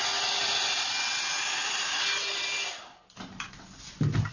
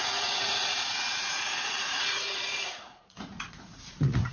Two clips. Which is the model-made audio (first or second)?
second